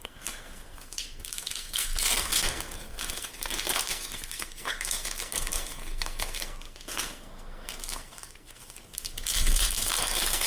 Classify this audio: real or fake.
fake